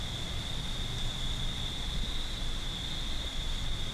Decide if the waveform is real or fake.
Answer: real